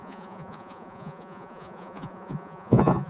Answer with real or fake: fake